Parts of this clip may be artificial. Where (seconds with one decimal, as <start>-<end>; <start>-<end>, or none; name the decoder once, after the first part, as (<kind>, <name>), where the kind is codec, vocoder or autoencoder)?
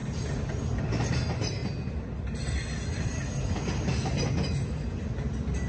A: none